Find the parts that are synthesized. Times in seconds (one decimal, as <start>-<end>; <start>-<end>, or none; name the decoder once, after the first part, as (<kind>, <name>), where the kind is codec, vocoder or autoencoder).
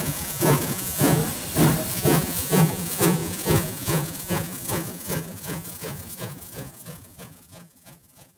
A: 0.0-1.2 (vocoder, Vocos); 1.9-8.4